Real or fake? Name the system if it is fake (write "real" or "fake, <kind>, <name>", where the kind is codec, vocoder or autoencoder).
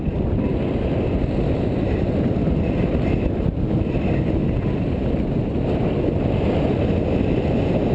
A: real